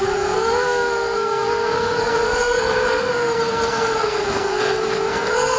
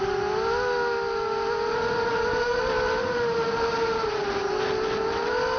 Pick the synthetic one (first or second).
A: first